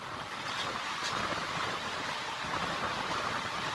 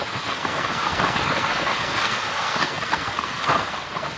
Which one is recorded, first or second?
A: first